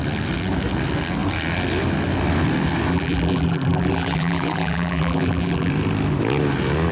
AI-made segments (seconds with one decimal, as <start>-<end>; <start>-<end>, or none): 2.9-5.7

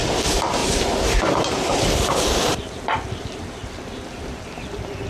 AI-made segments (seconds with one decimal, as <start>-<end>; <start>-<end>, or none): 0.0-2.5; 3.1-3.6